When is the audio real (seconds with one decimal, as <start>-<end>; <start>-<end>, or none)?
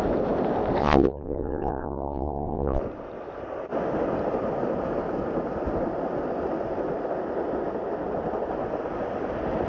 0.0-0.8; 2.8-9.7